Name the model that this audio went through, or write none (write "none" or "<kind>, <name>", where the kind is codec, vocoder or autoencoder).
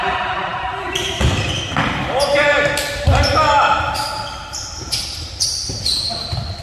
none